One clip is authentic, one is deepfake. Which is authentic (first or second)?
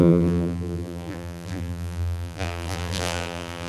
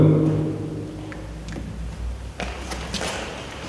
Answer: second